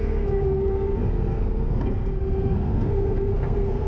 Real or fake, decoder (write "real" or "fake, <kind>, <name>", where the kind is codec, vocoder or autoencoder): fake, codec, SNAC